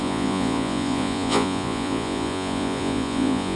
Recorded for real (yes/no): no